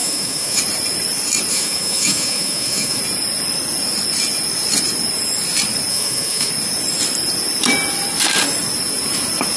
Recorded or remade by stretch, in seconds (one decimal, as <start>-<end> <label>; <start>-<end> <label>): 0.0-0.6 remade; 0.6-1.5 recorded; 1.5-3.0 remade; 3.0-5.9 recorded; 5.9-6.5 remade; 6.5-9.6 recorded